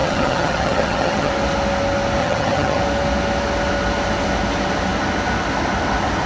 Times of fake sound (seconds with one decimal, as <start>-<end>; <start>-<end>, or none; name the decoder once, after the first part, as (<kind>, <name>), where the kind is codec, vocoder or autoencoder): 0.0-1.3 (vocoder, HiFi-GAN); 2.2-2.8